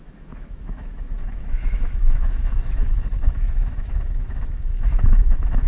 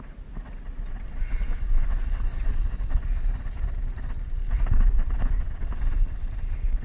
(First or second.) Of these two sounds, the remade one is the first